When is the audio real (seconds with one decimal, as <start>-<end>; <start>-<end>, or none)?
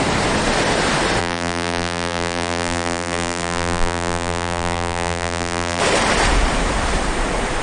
0.0-1.2; 5.8-7.6